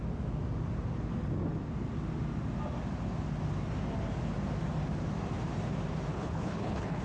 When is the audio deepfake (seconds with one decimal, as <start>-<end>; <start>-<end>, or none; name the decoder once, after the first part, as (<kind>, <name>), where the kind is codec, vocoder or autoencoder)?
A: 6.1-7.0 (codec, HILCodec)